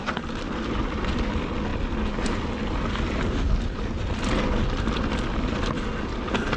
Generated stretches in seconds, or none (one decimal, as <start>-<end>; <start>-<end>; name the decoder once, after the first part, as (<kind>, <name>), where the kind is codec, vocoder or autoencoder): none